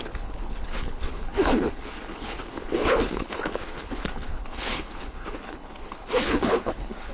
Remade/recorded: remade